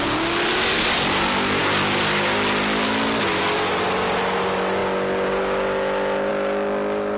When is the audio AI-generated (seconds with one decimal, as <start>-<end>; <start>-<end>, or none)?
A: none